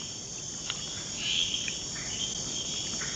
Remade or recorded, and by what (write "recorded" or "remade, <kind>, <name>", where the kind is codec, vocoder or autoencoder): recorded